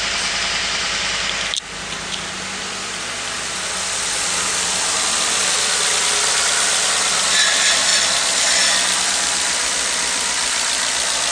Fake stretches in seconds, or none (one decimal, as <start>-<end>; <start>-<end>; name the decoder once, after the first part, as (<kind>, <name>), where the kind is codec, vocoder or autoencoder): 0.0-11.3 (vocoder, BigVGAN v2)